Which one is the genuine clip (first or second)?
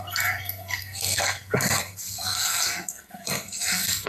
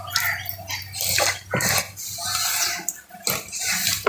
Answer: second